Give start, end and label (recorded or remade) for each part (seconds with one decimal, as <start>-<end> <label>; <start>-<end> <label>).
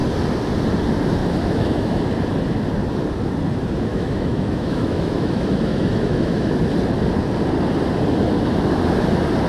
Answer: 0.0-1.2 recorded; 1.2-2.0 remade; 2.0-3.9 recorded; 3.9-6.5 remade; 6.5-9.5 recorded